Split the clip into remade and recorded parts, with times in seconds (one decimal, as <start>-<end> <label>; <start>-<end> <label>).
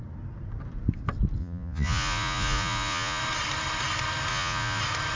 0.0-1.4 recorded; 1.4-3.2 remade; 3.2-4.3 recorded; 4.3-4.8 remade; 4.8-5.2 recorded